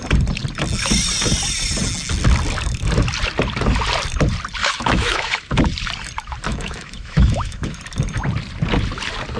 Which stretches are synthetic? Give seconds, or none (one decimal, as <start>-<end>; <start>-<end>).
4.6-5.6; 6.5-7.7